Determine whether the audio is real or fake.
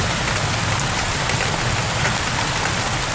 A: real